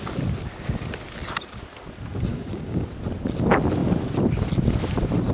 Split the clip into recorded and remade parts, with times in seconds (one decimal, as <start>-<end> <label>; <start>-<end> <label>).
0.0-2.3 recorded; 2.3-2.9 remade; 2.9-5.3 recorded